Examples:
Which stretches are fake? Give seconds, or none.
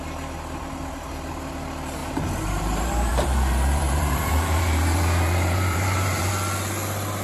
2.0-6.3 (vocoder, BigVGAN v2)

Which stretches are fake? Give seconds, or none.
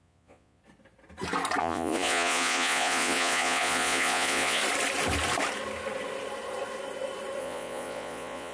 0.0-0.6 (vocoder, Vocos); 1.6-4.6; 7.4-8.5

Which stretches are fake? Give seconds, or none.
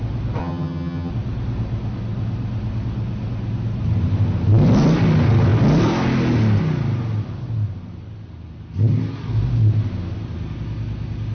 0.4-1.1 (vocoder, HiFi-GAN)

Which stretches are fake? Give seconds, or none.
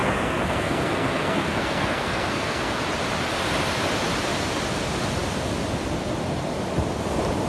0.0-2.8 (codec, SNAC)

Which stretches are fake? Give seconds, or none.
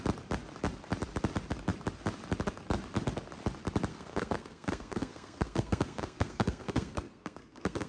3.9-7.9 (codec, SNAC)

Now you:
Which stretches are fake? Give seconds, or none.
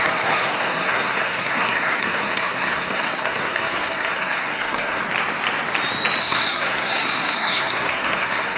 0.0-5.0 (codec, SNAC); 6.2-8.6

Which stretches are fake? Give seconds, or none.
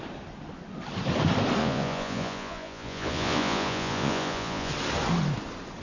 1.6-4.7 (vocoder, Vocos)